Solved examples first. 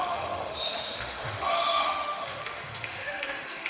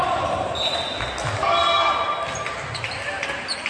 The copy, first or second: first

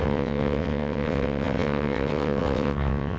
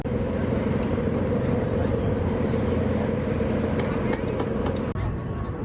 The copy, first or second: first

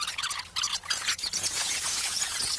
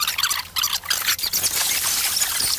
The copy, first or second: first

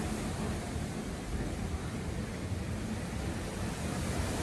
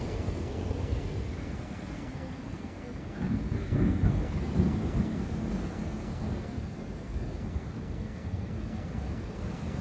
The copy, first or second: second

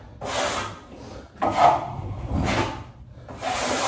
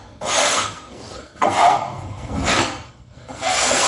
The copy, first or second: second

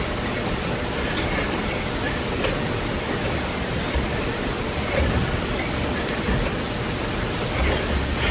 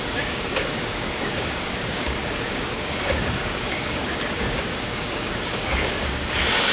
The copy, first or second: second